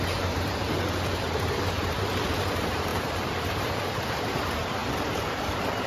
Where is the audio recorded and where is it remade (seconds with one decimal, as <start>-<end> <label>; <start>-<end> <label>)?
0.0-5.9 remade